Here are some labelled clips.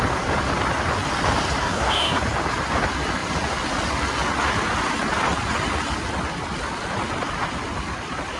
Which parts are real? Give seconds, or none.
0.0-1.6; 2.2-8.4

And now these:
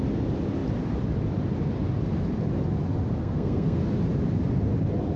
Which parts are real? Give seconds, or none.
0.0-3.2; 3.8-5.2

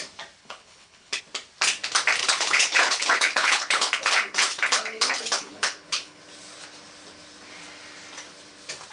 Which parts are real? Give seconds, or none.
0.0-0.4; 1.2-2.2; 6.2-8.9

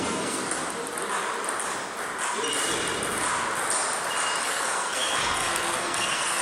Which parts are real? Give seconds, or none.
0.6-4.4